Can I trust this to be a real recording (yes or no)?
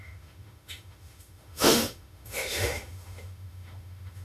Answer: no